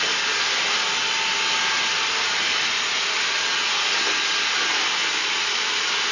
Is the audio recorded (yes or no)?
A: yes